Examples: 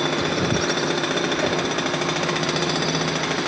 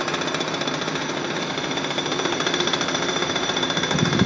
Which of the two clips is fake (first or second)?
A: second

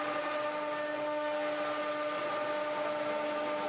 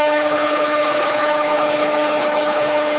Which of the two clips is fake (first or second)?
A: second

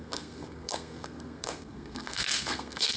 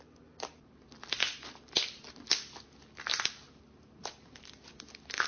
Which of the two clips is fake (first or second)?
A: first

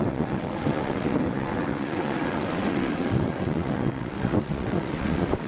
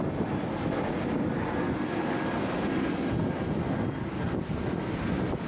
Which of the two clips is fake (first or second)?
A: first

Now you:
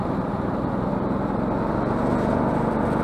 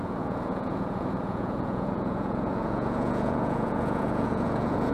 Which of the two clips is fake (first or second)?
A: second